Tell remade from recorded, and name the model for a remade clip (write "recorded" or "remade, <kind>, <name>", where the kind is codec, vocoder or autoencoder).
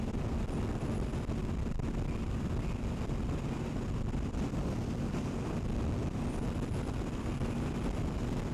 recorded